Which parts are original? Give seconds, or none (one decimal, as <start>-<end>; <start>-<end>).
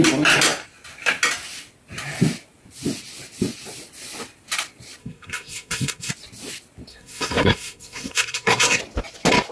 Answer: 0.0-5.0; 6.1-6.9; 8.8-9.5